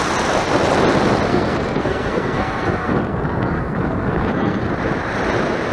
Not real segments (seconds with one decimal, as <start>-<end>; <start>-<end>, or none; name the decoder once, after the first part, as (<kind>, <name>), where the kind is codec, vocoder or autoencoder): 1.3-4.7 (codec, SNAC)